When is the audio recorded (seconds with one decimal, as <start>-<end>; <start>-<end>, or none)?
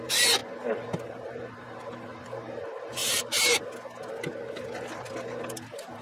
0.0-2.1; 2.6-3.0; 3.6-6.0